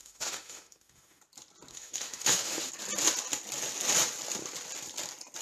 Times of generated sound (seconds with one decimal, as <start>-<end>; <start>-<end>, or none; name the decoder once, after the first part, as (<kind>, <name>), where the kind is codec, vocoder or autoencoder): 0.0-1.2 (autoencoder, DAC-VAE); 1.7-2.7